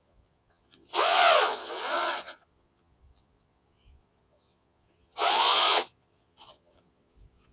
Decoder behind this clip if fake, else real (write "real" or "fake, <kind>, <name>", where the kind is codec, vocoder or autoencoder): fake, vocoder, Vocos